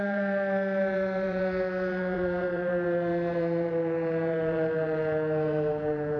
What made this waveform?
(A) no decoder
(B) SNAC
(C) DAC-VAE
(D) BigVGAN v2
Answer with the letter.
D